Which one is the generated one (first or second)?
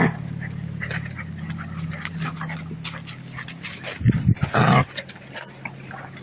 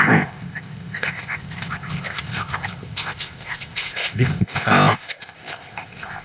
second